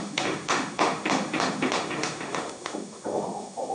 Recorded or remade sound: remade